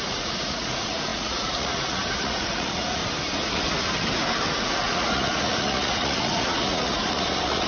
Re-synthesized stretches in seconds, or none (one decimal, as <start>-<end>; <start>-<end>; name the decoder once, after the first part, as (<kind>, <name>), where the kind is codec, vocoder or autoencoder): 0.0-3.0 (vocoder, Vocos); 4.5-7.7